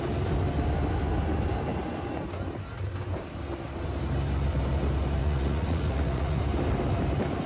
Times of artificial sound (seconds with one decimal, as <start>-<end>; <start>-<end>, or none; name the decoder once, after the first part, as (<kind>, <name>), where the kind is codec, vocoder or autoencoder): 5.2-6.4 (vocoder, Vocos)